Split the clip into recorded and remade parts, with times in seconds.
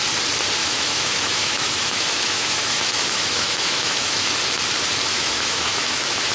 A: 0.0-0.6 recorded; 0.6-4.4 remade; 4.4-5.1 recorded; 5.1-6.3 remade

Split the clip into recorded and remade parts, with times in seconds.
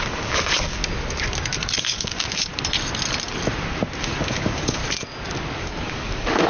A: 0.0-0.8 remade; 0.8-1.8 recorded; 1.8-2.5 remade; 2.5-4.0 recorded; 4.0-4.8 remade; 4.8-5.6 recorded; 5.6-6.5 remade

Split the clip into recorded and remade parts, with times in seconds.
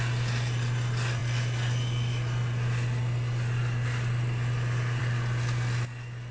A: 0.0-6.3 recorded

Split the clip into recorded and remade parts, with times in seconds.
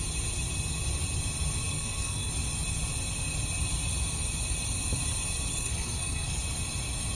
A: 0.0-1.7 recorded; 1.7-2.3 remade; 2.3-5.5 recorded; 5.5-6.4 remade; 6.4-7.1 recorded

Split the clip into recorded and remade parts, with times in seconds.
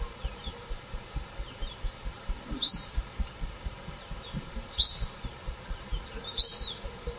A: 0.0-7.2 remade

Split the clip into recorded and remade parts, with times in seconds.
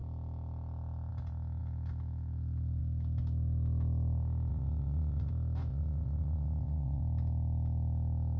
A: 0.0-4.5 recorded; 4.5-5.3 remade; 5.3-5.7 recorded; 5.7-7.0 remade; 7.0-8.4 recorded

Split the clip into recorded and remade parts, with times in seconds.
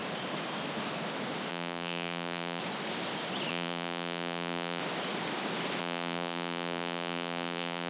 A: 0.0-1.5 recorded; 1.5-2.6 remade; 2.6-3.5 recorded; 3.5-4.8 remade; 4.8-5.8 recorded; 5.8-7.9 remade